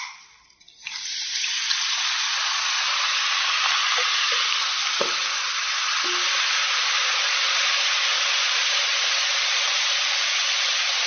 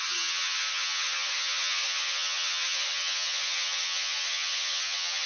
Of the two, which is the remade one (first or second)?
second